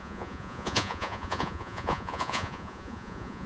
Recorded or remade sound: remade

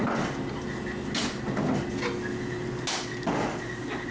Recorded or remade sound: recorded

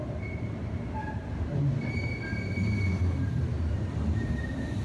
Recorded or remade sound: remade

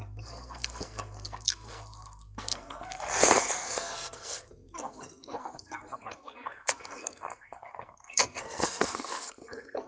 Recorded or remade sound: remade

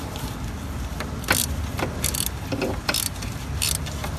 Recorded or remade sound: recorded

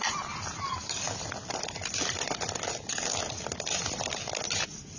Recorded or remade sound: recorded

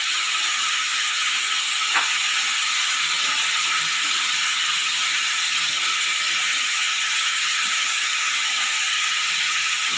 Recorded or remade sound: remade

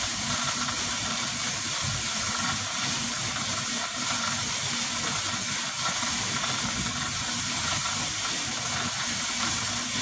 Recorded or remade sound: remade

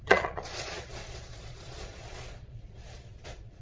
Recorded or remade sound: remade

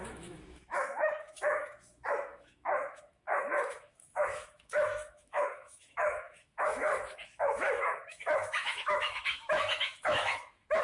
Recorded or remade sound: remade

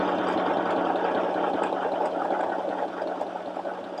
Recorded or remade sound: recorded